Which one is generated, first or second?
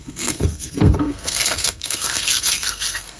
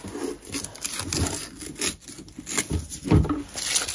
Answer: first